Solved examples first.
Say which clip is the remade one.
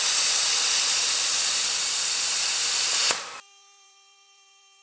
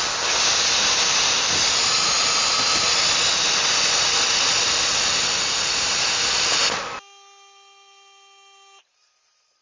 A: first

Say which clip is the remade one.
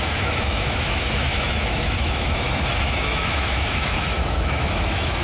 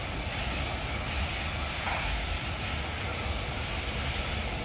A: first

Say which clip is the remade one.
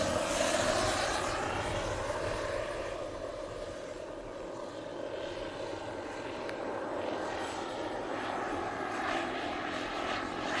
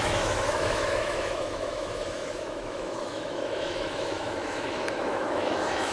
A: second